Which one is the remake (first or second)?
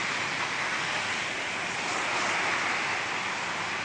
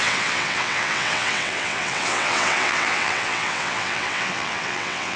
second